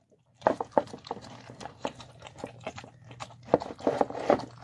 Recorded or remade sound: recorded